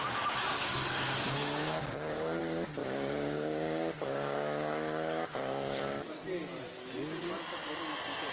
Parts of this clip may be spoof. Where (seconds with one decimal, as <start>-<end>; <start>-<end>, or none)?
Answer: 0.4-2.4; 2.8-5.8